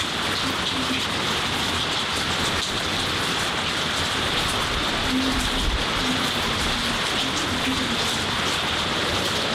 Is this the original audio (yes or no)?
yes